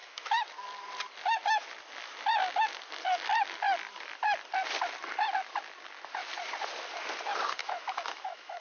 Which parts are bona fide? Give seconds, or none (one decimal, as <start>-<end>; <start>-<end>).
0.5-7.6